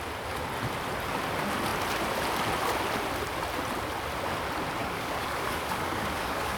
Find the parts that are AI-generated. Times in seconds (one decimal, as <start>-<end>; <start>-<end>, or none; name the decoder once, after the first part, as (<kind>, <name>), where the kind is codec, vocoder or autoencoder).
4.8-6.6 (codec, DAC)